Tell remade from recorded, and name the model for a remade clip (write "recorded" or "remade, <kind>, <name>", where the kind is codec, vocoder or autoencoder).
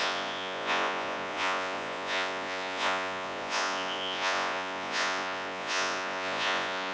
remade, vocoder, Vocos